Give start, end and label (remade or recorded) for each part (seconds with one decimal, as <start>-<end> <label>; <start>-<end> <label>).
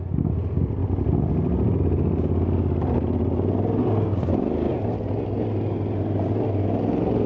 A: 0.0-7.3 recorded